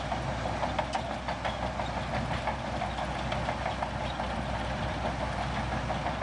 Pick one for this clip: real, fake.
real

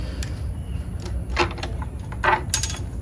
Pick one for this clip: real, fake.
real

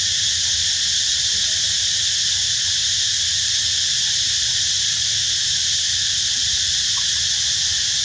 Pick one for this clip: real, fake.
fake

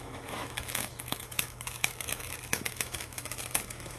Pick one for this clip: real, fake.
fake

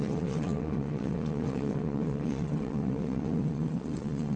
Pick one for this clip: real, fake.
fake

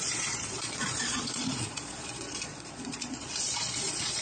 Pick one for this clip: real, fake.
fake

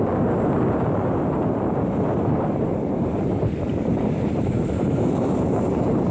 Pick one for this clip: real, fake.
fake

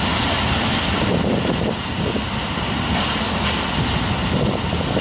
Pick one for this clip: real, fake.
real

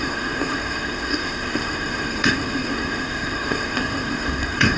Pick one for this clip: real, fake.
fake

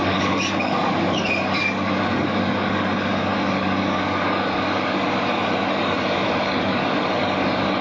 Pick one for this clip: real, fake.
fake